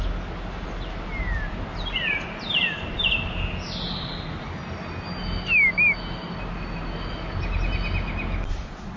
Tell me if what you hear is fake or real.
real